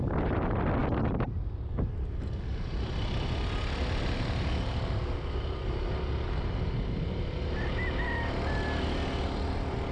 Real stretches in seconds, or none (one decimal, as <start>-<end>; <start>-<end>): 0.0-9.9